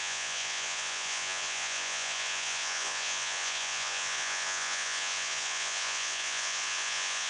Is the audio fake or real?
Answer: fake